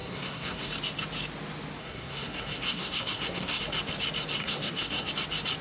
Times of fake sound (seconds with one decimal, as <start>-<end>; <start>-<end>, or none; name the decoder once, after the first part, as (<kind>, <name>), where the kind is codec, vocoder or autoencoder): 0.0-0.7 (codec, SNAC); 1.8-3.6; 4.4-5.1